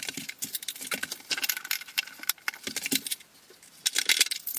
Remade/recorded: recorded